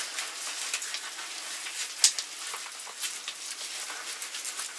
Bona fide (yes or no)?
yes